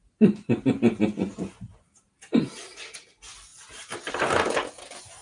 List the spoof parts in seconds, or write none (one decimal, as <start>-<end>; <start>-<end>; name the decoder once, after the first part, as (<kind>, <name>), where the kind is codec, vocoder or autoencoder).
1.3-2.4 (vocoder, BigVGAN v2); 3.5-4.1